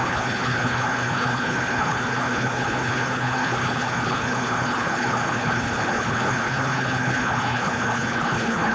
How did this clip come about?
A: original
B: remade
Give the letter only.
B